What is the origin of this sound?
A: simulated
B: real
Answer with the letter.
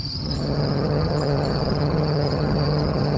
A